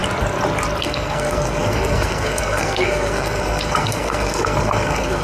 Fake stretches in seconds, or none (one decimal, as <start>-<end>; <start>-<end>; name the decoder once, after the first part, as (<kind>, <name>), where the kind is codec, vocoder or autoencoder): 0.8-5.2 (codec, SNAC)